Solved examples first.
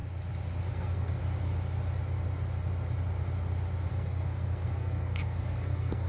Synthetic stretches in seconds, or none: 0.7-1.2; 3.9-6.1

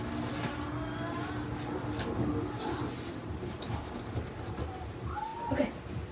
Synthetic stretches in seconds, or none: none

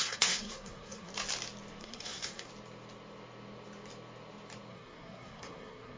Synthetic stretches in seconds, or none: 0.0-1.1; 1.8-2.5; 4.7-6.0

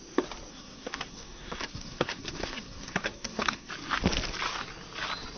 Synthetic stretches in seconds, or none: 0.5-3.7